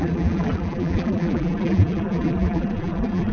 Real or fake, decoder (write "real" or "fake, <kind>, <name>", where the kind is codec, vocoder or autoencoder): fake, vocoder, BigVGAN v2